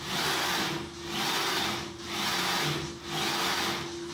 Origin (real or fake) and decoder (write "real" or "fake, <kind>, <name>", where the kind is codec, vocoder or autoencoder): real